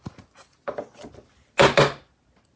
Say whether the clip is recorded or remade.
recorded